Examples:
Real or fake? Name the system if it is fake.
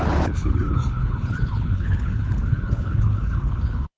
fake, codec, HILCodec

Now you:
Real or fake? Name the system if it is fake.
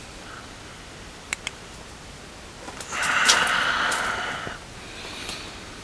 real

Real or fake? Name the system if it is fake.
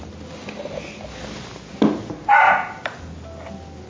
real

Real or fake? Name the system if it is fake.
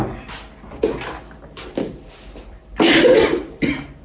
real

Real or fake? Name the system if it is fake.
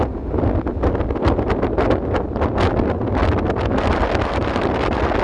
real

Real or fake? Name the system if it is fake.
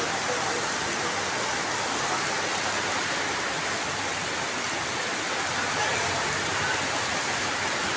real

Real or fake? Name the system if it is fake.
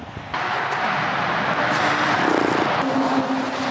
real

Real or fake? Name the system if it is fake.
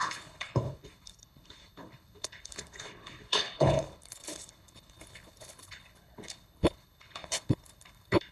fake, codec, HILCodec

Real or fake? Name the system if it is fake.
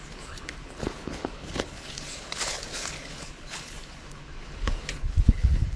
fake, codec, HILCodec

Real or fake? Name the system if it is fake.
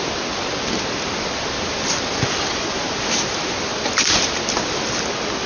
real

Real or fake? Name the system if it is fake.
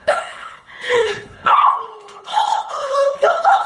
fake, codec, HILCodec